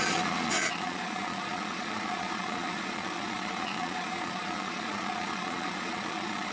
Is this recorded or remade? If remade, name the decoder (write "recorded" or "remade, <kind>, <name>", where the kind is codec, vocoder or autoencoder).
remade, vocoder, Vocos